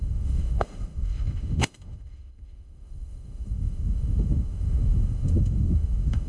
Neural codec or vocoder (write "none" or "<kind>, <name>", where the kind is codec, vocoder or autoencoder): autoencoder, DAC-VAE